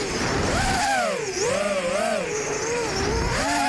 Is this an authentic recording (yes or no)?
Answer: no